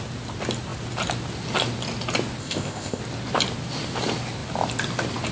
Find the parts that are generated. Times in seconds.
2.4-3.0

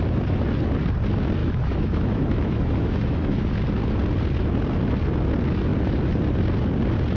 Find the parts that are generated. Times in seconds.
1.4-3.5

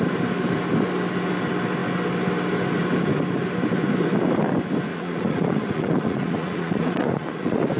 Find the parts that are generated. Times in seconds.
4.9-7.8

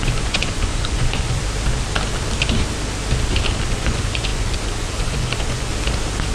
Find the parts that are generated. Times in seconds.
0.0-1.4; 3.7-5.7

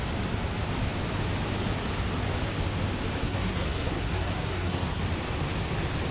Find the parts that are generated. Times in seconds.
3.2-5.0